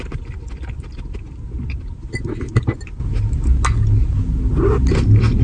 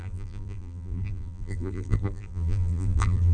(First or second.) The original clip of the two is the first